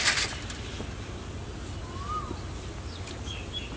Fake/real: real